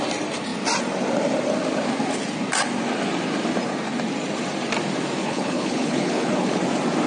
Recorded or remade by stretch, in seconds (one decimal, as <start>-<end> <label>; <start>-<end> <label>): 0.0-5.2 recorded; 5.2-6.6 remade; 6.6-7.1 recorded